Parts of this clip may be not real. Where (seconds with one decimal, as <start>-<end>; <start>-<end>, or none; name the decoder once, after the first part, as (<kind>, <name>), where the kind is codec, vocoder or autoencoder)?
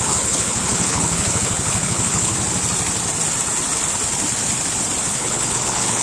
0.0-2.3 (codec, HILCodec); 5.1-6.0